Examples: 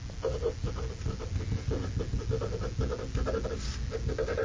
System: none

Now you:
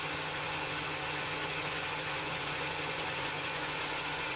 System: vocoder, Vocos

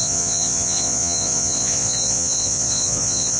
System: vocoder, Vocos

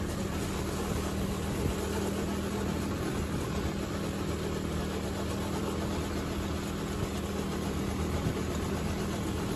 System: none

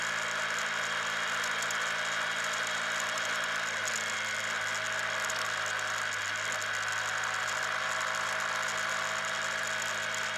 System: none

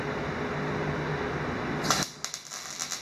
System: none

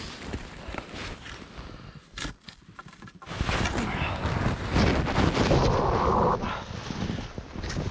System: none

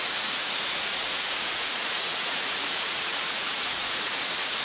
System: vocoder, Vocos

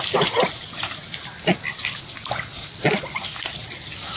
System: none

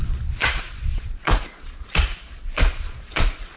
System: vocoder, Vocos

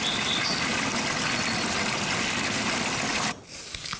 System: none